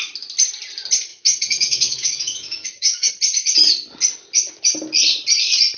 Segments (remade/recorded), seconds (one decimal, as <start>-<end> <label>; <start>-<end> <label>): 0.0-1.1 recorded; 1.1-3.1 remade; 3.1-5.8 recorded